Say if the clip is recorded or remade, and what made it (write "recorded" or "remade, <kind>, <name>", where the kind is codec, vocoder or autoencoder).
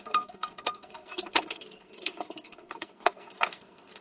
remade, codec, SNAC